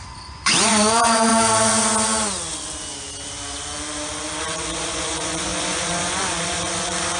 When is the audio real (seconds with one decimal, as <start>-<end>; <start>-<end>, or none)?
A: 1.3-4.4